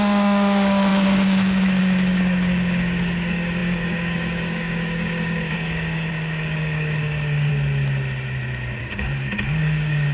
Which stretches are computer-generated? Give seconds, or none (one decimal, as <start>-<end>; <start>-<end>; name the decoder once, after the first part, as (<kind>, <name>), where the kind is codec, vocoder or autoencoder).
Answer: 0.0-7.5 (codec, DAC); 8.8-10.1

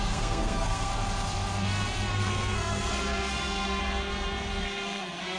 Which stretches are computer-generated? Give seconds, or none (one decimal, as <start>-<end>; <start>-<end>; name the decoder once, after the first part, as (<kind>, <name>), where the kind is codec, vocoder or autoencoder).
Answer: 0.0-0.9 (codec, SNAC); 2.1-3.8; 4.6-5.4

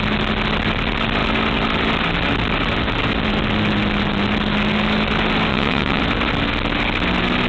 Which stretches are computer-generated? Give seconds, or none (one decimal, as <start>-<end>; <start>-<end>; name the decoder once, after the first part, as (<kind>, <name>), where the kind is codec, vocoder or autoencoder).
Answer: 5.5-6.0 (vocoder, WaveNeXt)

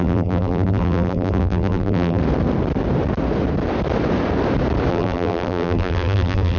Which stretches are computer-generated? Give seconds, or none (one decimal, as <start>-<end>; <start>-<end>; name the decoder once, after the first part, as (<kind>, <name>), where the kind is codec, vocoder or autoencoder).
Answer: 0.0-2.2 (vocoder, BigVGAN v2); 4.9-6.6

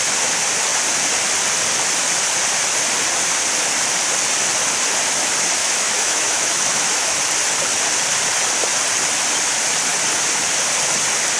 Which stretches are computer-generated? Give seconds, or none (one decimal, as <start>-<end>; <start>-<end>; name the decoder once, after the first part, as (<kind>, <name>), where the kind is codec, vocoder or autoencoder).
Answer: 5.6-7.2 (autoencoder, DAC-VAE)

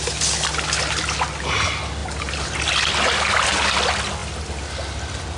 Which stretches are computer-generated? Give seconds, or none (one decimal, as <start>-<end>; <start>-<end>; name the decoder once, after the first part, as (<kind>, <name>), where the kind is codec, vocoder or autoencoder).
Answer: 2.0-2.6 (vocoder, BigVGAN v2)

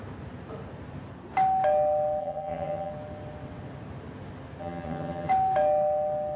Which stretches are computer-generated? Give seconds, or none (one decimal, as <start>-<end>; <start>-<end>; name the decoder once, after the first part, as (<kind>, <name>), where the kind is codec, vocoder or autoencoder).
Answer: 2.2-2.9 (vocoder, HiFi-GAN); 4.6-5.3

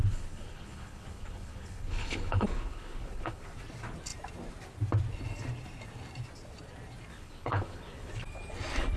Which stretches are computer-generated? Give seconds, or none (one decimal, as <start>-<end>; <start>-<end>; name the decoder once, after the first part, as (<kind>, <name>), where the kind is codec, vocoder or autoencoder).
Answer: 0.0-3.6 (codec, HILCodec); 7.1-8.1